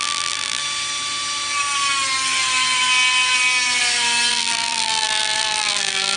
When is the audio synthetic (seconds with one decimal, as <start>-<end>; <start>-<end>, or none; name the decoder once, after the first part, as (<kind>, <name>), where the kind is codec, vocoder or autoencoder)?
0.0-0.6 (vocoder, BigVGAN v2); 4.3-6.2